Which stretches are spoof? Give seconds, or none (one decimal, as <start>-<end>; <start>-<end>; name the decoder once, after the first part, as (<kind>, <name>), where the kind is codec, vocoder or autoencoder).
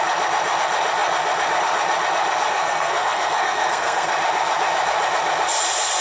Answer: 2.5-4.1 (codec, SNAC)